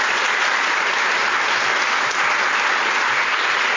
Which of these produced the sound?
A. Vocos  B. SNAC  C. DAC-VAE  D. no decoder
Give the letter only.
D